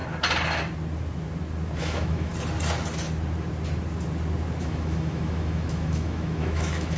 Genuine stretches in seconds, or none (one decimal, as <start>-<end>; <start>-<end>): 0.0-1.8; 2.3-4.6